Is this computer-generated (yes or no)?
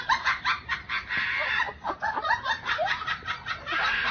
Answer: yes